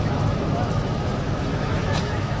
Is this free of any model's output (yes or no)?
no